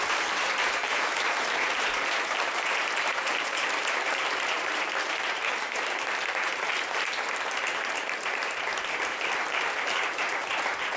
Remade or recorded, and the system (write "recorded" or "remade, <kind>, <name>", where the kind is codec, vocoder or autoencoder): remade, vocoder, BigVGAN v2